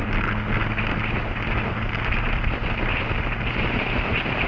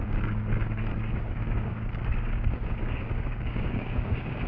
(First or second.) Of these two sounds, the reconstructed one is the second